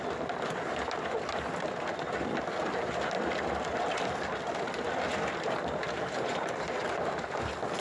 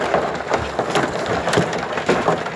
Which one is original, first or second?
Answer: second